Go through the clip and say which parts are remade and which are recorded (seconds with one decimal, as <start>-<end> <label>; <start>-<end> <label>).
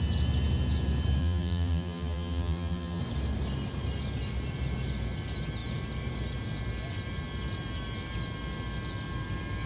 0.0-1.2 recorded; 1.2-3.0 remade; 3.0-9.7 recorded